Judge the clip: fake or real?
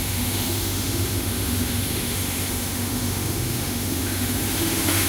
fake